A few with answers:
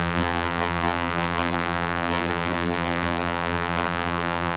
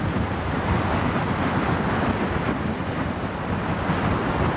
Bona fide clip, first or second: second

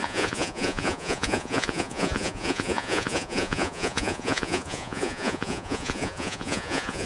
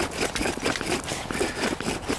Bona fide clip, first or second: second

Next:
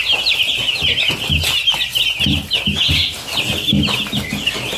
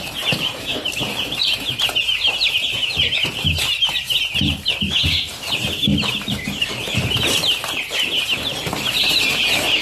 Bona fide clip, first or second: first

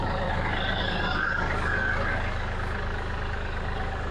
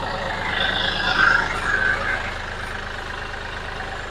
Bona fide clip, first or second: second